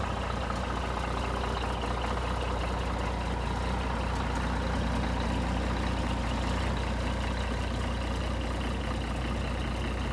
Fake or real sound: real